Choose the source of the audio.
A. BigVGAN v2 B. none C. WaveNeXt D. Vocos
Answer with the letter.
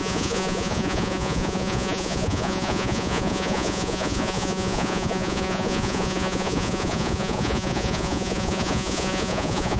D